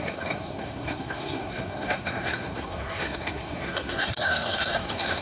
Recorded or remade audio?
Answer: remade